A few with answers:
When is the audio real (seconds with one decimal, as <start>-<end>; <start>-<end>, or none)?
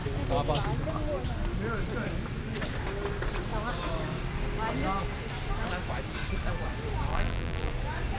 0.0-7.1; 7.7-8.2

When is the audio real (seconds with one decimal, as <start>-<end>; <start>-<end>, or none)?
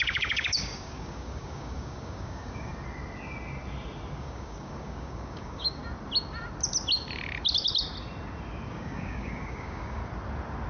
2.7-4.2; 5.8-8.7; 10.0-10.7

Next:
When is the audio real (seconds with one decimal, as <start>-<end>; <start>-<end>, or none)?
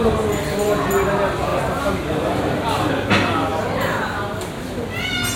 0.0-5.4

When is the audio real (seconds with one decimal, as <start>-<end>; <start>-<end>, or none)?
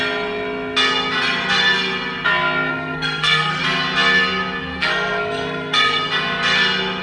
0.0-2.7; 3.6-4.7; 6.0-7.0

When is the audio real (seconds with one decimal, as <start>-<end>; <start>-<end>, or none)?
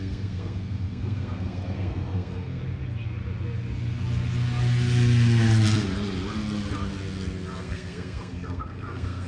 2.6-7.6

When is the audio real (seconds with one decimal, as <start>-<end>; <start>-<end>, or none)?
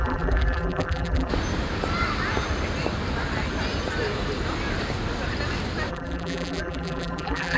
1.3-5.9